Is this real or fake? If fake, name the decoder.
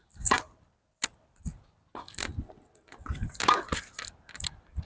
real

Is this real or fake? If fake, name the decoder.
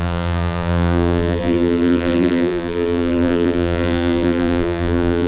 fake, vocoder, BigVGAN v2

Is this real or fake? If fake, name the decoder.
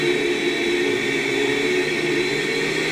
real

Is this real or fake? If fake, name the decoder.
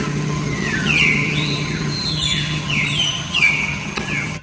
fake, vocoder, HiFi-GAN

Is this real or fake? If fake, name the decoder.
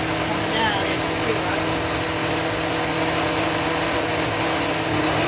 real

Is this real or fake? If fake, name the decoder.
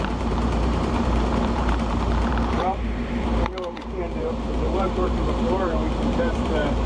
fake, vocoder, BigVGAN v2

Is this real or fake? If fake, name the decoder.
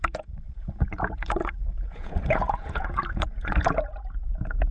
fake, vocoder, Vocos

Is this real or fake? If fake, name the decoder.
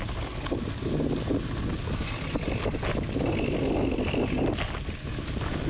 real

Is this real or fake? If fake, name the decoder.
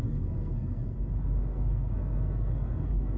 fake, codec, SNAC